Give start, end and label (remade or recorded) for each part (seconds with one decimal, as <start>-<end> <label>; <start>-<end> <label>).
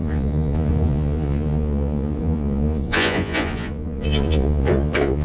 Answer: 0.0-5.2 remade